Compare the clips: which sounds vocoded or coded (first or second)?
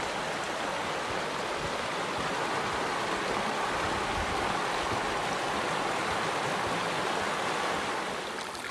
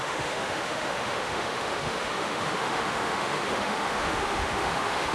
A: second